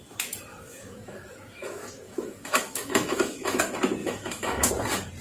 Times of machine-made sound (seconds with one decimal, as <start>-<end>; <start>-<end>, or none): 0.5-3.6; 4.0-4.7